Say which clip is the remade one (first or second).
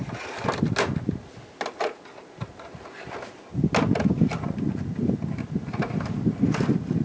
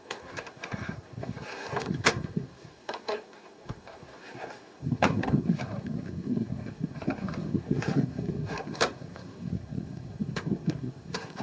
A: second